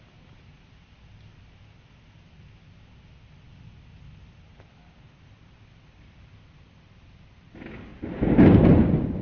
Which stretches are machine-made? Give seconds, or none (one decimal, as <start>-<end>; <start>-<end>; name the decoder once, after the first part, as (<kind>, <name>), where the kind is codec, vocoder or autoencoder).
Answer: none